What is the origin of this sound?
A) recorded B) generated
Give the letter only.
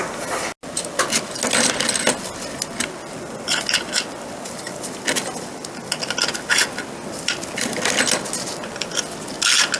A